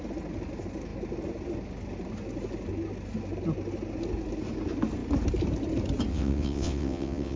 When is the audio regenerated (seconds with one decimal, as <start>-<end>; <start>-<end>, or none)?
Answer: 6.1-7.4